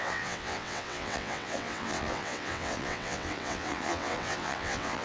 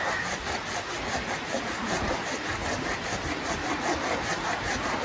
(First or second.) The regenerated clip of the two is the first